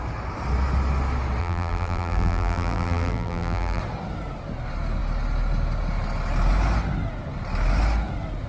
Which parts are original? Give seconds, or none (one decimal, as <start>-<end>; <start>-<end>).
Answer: 0.0-1.4; 3.8-8.5